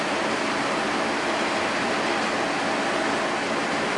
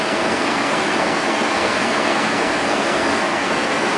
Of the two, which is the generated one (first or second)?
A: second